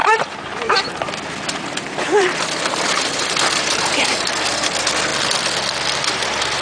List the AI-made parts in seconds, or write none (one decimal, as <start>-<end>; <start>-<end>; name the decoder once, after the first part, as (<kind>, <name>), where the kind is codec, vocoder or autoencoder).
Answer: 0.0-5.1 (vocoder, BigVGAN v2); 6.0-6.6